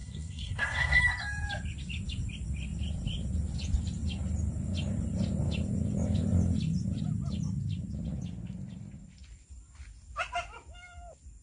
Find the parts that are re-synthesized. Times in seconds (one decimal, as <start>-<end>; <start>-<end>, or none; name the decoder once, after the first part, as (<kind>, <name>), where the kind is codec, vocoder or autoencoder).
0.0-1.0 (codec, SNAC)